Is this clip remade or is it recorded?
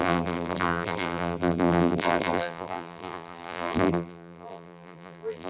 remade